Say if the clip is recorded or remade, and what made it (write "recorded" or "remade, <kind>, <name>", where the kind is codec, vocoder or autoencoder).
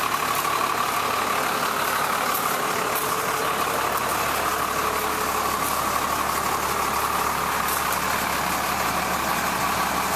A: recorded